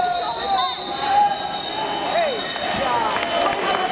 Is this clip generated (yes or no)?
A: no